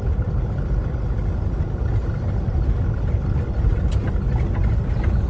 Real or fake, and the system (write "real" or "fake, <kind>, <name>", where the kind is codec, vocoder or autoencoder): real